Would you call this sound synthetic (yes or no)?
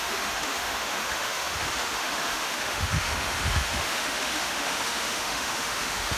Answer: yes